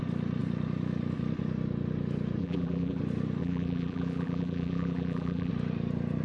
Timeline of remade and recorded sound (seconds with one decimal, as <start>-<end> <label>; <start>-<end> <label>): 0.0-2.4 recorded; 2.4-3.0 remade; 3.0-3.4 recorded; 3.4-5.5 remade; 5.5-6.2 recorded